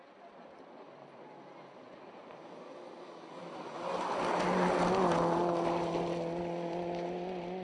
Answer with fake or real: real